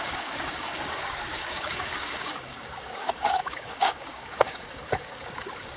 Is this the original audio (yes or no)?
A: no